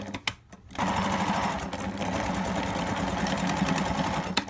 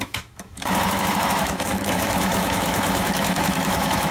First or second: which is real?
first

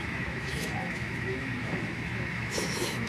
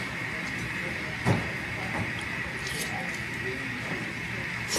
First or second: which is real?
second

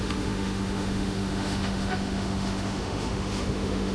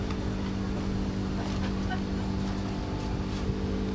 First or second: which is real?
second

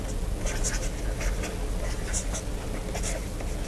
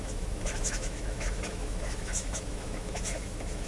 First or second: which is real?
first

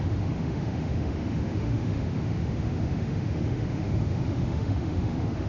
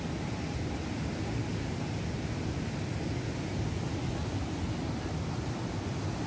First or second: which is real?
second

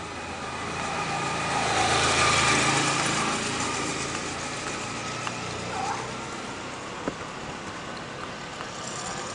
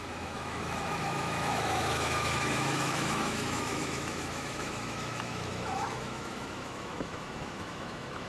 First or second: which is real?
first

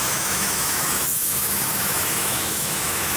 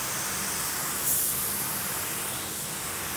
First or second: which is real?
second